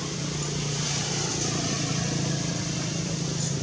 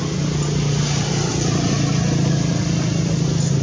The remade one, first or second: first